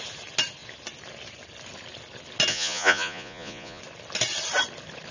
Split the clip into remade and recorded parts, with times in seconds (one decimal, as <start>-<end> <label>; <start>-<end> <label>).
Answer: 0.0-2.5 recorded; 2.5-3.8 remade; 3.8-5.1 recorded